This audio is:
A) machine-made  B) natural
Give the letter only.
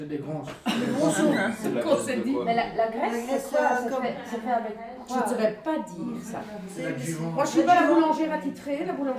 B